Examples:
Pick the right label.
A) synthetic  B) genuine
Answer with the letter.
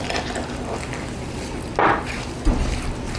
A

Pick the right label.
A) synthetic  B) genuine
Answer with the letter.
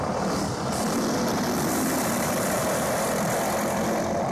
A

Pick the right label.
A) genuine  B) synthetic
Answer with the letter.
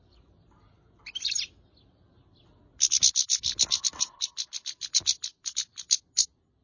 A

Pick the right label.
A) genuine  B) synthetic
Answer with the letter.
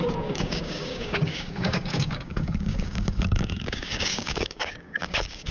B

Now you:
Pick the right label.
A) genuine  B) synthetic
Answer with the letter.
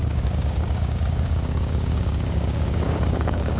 B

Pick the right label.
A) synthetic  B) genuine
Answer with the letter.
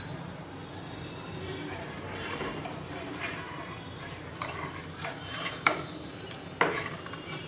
A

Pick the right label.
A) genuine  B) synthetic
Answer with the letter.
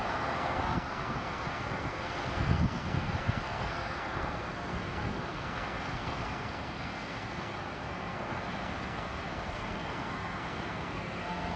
B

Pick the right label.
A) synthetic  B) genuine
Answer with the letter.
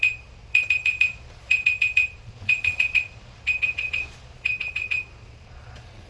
A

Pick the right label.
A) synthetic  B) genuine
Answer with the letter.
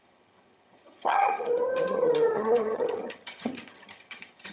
A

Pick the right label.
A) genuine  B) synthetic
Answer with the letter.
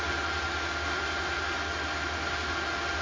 A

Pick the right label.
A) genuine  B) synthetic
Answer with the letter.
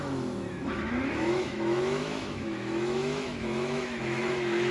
B